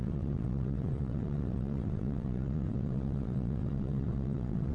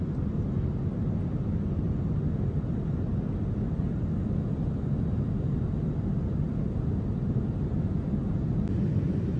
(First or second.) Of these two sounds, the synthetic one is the first